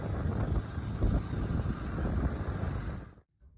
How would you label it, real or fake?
real